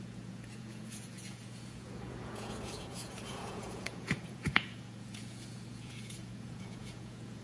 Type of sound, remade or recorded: remade